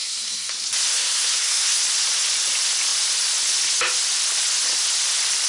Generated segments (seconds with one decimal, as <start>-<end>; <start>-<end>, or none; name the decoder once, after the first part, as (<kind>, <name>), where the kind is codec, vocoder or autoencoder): 0.0-0.5 (codec, SNAC); 0.9-1.8